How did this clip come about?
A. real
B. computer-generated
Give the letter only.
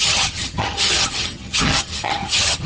B